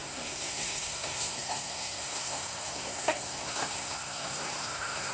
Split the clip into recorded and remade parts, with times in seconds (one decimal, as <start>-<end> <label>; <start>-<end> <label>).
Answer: 0.0-5.1 remade